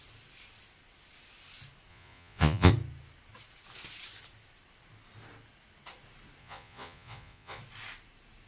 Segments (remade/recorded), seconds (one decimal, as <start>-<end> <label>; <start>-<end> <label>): 0.0-1.9 recorded; 1.9-2.7 remade; 2.7-6.4 recorded; 6.4-7.6 remade; 7.6-8.5 recorded